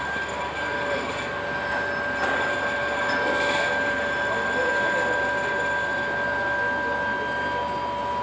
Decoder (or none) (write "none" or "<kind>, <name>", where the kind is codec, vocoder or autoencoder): none